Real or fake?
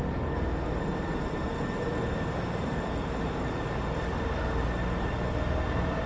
real